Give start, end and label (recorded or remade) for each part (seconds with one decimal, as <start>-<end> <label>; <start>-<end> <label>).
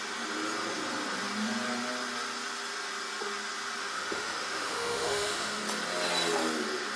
0.0-3.8 recorded; 3.8-5.6 remade; 5.6-7.0 recorded